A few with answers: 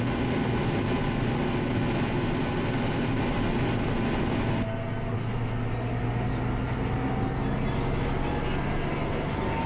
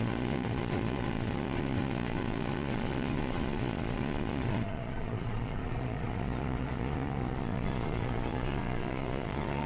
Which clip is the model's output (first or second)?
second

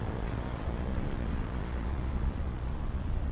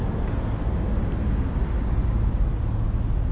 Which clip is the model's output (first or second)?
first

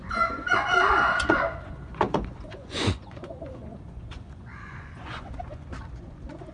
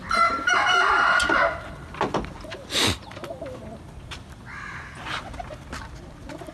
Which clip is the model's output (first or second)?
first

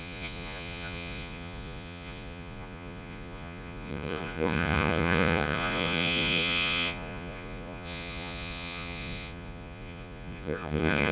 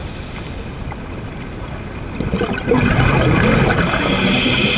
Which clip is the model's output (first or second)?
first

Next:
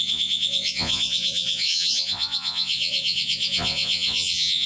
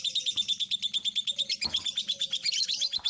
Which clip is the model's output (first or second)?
first